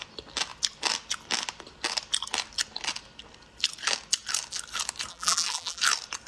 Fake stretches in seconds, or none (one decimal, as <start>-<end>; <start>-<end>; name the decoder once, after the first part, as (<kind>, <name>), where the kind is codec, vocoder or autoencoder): 5.1-5.8 (vocoder, BigVGAN v2)